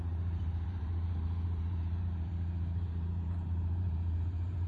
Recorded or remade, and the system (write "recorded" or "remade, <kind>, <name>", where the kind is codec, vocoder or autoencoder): remade, vocoder, BigVGAN v2